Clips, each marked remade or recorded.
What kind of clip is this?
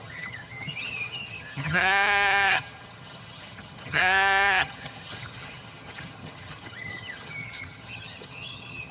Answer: remade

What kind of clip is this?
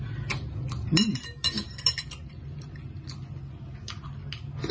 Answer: recorded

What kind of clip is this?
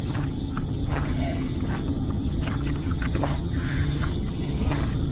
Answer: remade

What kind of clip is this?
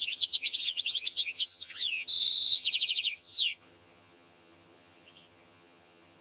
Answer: remade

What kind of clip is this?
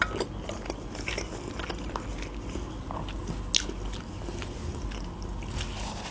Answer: recorded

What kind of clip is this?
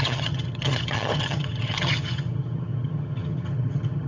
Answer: remade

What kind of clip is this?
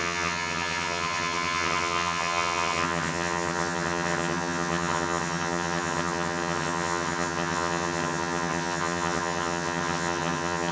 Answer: remade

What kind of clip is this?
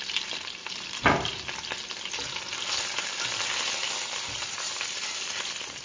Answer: recorded